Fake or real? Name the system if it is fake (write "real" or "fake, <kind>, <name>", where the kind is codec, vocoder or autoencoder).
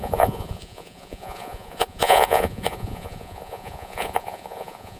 fake, vocoder, Vocos